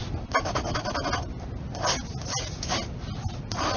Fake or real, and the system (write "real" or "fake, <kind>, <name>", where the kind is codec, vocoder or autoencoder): real